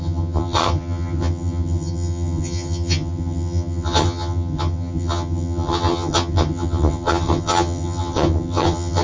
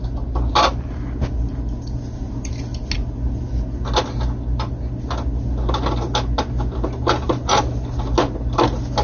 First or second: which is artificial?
first